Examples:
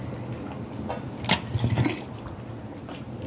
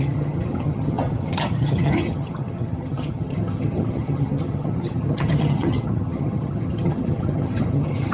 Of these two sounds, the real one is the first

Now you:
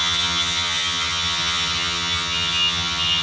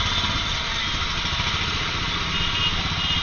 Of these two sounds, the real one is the second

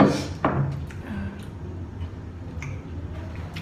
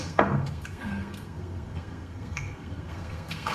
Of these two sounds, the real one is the first